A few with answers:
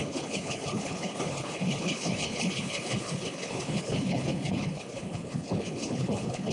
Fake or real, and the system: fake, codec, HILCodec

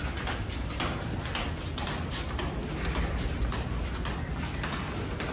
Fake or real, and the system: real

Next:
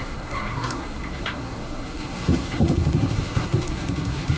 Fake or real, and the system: fake, codec, SNAC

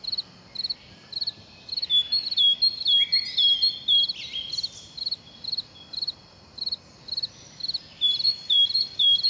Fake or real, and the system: real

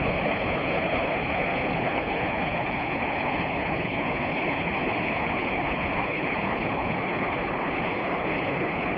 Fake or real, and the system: fake, codec, HILCodec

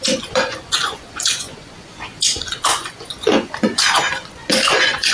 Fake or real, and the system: fake, vocoder, Vocos